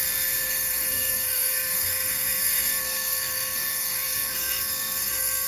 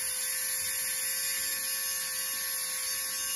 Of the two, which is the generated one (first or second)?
first